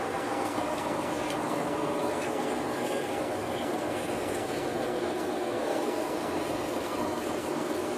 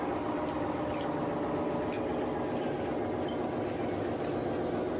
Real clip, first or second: second